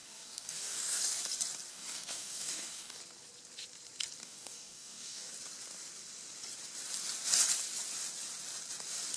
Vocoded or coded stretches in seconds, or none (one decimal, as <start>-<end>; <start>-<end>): 0.0-1.2; 1.7-3.0; 4.2-5.3

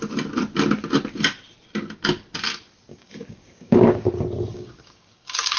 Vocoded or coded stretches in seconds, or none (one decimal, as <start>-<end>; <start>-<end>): 2.9-4.1; 4.5-5.6